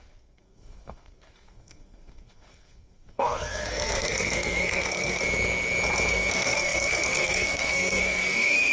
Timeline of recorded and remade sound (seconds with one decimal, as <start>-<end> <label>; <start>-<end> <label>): 0.0-5.2 remade; 5.2-6.1 recorded; 6.1-8.7 remade